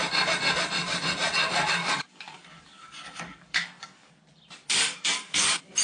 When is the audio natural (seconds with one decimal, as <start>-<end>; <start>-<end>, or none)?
0.0-1.8; 4.1-4.7